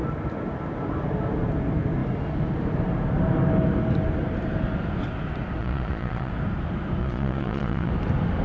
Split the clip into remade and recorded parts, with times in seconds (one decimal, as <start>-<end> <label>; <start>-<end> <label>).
0.0-5.6 recorded; 5.6-6.3 remade; 6.3-7.0 recorded; 7.0-7.9 remade; 7.9-8.4 recorded